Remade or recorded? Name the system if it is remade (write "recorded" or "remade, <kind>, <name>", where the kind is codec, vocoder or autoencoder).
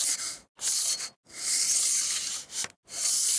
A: recorded